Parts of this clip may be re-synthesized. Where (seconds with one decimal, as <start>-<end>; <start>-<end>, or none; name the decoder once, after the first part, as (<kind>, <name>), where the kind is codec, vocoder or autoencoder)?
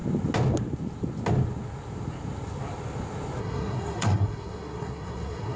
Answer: 3.4-5.6 (codec, SNAC)